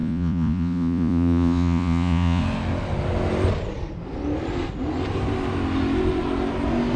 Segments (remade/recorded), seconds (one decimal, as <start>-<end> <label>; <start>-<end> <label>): 0.0-2.4 remade; 2.4-7.0 recorded